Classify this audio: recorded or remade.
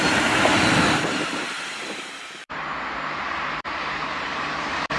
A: remade